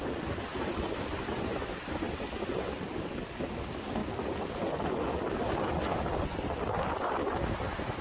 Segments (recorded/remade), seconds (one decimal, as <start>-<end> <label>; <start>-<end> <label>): 0.0-8.0 recorded